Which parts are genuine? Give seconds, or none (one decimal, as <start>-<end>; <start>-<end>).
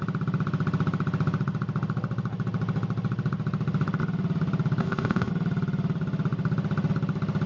0.0-4.8; 5.3-7.5